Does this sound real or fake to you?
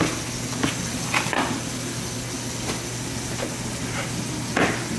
real